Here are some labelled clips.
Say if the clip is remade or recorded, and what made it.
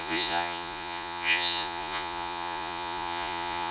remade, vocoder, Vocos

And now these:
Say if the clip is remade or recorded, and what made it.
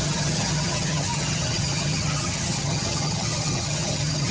remade, vocoder, HiFi-GAN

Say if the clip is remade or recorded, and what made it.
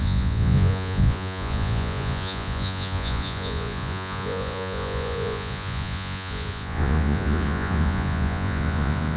remade, vocoder, Vocos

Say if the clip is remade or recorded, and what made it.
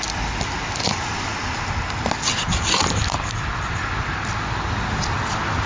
recorded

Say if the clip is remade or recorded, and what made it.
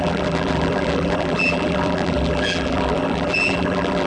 remade, vocoder, BigVGAN v2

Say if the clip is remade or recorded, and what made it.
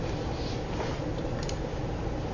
recorded